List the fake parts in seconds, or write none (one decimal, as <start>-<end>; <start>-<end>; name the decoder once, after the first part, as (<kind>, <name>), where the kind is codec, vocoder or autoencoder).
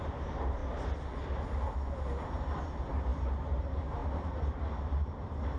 0.0-0.6 (vocoder, BigVGAN v2); 2.6-5.6